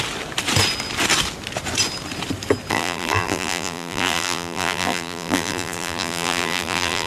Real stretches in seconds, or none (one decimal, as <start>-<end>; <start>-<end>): 0.0-2.7